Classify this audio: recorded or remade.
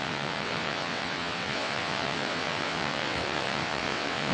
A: remade